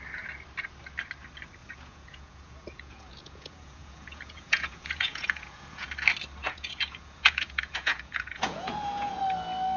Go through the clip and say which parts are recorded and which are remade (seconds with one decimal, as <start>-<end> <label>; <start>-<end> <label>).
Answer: 0.0-1.6 recorded; 1.6-5.9 remade; 5.9-6.4 recorded; 6.4-9.2 remade; 9.2-9.8 recorded